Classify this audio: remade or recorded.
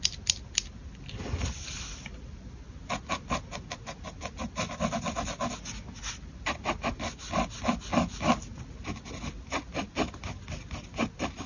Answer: recorded